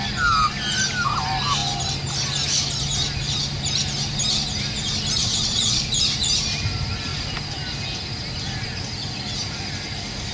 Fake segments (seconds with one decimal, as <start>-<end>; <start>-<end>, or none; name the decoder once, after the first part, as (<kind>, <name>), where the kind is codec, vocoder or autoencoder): 5.2-5.8 (vocoder, WaveNeXt)